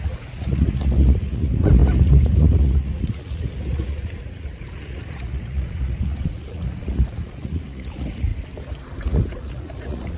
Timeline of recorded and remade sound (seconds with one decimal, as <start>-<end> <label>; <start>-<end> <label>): 0.0-8.3 remade; 8.3-9.0 recorded; 9.0-10.2 remade